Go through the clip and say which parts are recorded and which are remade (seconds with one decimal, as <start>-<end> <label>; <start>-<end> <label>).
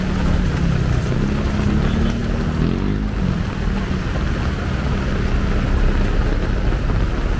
0.0-7.4 recorded